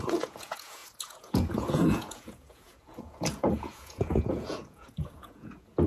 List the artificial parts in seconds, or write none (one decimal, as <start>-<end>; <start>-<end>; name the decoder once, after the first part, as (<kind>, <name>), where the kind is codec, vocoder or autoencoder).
0.0-5.9 (vocoder, Vocos)